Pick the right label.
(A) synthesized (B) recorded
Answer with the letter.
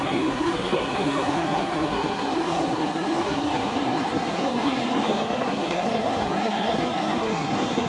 A